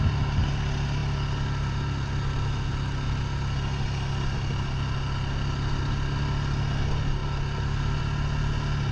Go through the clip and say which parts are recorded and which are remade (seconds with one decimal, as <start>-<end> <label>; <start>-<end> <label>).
0.0-8.9 recorded